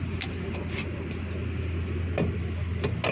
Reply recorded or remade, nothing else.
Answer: recorded